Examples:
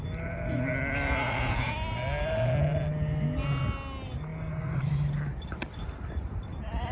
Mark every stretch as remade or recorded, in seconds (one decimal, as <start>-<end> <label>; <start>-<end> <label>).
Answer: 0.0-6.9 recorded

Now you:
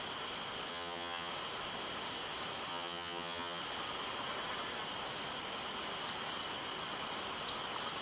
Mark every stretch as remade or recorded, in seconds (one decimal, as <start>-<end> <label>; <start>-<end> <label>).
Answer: 0.0-0.7 recorded; 0.7-1.3 remade; 1.3-2.7 recorded; 2.7-3.6 remade; 3.6-8.0 recorded

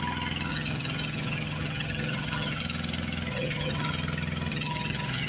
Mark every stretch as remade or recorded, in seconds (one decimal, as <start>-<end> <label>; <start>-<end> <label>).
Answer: 0.0-0.5 recorded; 0.5-2.6 remade; 2.6-3.3 recorded; 3.3-3.9 remade; 3.9-4.5 recorded; 4.5-5.3 remade